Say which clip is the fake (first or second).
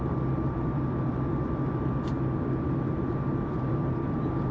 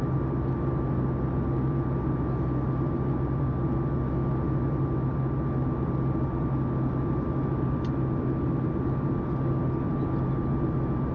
first